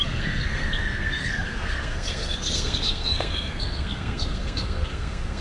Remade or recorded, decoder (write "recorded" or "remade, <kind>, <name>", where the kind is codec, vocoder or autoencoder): remade, codec, SNAC